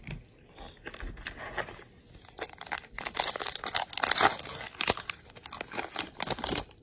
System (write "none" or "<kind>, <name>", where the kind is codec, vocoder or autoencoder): none